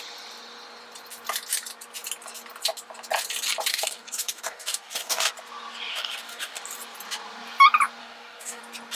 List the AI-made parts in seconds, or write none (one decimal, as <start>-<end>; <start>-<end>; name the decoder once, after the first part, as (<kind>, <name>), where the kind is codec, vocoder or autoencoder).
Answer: 3.7-5.3 (codec, DAC); 5.9-6.6; 8.0-8.6